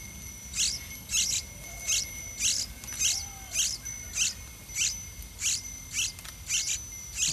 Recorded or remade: recorded